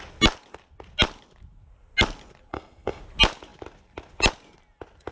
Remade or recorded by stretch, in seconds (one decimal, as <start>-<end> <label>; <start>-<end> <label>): 0.0-2.5 recorded; 2.5-3.0 remade; 3.0-5.1 recorded